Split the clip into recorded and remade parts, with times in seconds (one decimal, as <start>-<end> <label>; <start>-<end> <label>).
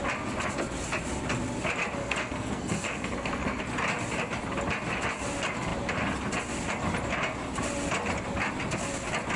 0.0-2.0 recorded; 2.0-3.6 remade; 3.6-9.4 recorded